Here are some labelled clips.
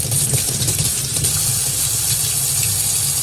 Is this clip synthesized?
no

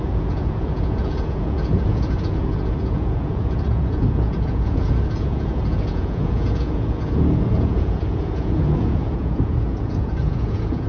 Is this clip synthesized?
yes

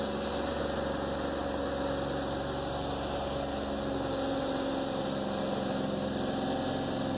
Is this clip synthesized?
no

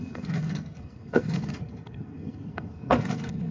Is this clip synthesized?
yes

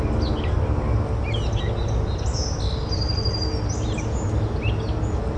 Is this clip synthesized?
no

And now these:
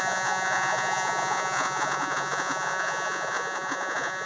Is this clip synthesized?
yes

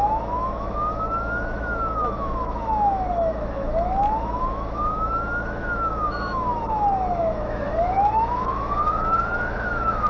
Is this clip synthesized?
yes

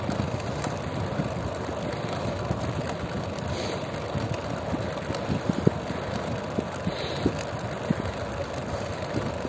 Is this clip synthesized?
no